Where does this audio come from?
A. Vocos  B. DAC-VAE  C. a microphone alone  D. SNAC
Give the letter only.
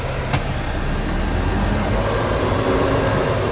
C